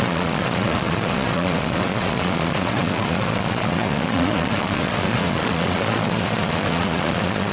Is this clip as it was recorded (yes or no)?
no